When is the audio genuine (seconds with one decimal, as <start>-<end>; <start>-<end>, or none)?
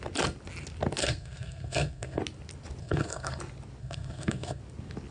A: 0.0-1.0; 2.2-2.8; 3.4-3.8; 4.6-5.1